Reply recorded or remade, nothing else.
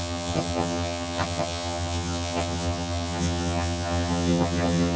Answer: remade